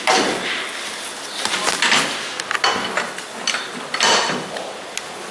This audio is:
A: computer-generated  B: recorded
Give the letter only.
B